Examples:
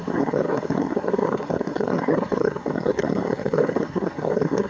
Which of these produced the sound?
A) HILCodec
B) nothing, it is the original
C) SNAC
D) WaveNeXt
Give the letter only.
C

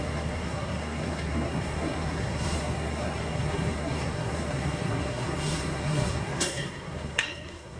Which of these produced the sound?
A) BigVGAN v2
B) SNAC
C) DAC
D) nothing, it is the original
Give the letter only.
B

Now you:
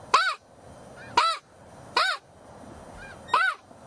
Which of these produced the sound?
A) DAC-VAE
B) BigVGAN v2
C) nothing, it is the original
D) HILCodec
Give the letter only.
C